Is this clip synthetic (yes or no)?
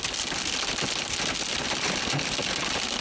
no